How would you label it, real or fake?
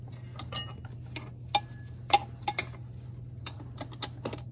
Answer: real